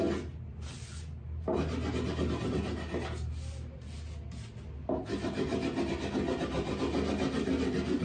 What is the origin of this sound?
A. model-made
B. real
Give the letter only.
B